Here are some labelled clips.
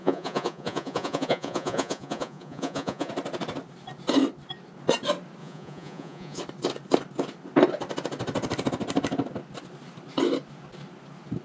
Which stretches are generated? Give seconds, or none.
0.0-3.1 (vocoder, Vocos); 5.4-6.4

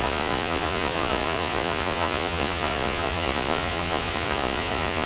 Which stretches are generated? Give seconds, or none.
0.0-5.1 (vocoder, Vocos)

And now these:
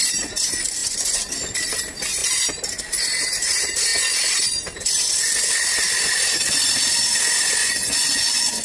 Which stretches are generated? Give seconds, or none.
0.8-1.3 (vocoder, Vocos); 7.6-8.6

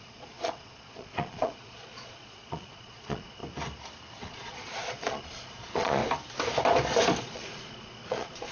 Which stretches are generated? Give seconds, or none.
0.0-3.4 (vocoder, Vocos); 4.2-6.0; 7.2-8.5